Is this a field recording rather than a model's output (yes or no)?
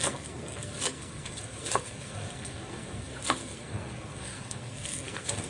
no